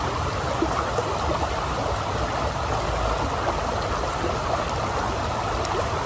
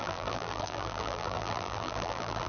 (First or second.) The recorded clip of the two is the first